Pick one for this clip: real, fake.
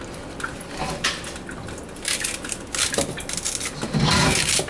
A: real